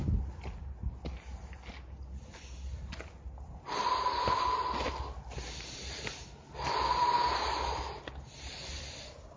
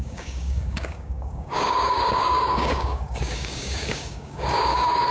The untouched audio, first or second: first